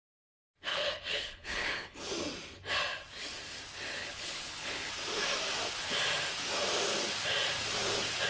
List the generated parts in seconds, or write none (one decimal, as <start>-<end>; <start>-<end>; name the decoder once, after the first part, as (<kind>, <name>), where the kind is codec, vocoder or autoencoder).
0.7-2.1 (codec, HILCodec); 4.0-4.9